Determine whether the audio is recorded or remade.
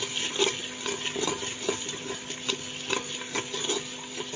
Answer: recorded